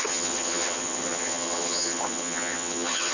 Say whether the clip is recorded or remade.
remade